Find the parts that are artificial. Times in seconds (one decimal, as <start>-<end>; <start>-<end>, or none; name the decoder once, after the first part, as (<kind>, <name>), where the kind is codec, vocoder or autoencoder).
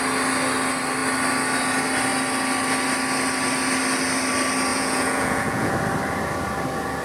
4.7-5.7 (vocoder, Vocos)